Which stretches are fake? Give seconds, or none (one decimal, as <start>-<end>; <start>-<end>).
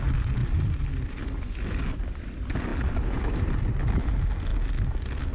0.4-2.2